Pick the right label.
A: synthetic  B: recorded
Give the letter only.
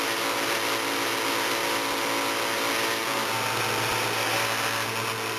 B